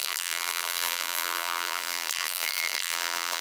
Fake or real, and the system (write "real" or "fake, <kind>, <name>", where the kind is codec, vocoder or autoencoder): fake, vocoder, BigVGAN v2